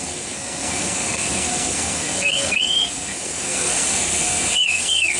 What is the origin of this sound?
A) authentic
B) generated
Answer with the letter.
B